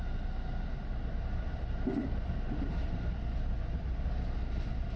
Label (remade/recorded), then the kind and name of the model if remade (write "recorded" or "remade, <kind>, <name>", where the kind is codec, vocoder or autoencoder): recorded